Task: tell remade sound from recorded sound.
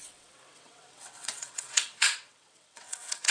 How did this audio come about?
remade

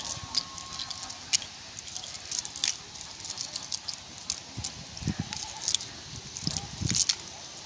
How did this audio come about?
recorded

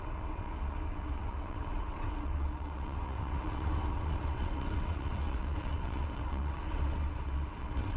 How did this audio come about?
remade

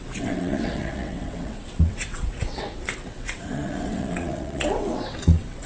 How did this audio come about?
remade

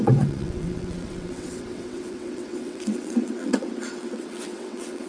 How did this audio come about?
remade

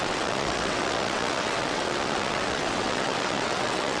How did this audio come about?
remade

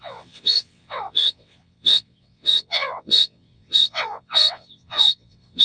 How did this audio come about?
remade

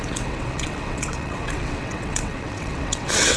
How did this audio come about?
remade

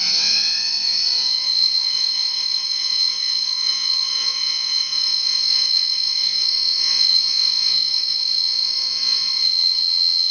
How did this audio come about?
remade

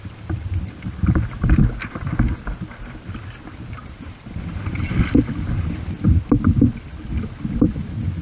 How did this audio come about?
recorded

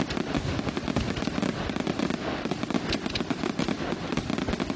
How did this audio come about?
recorded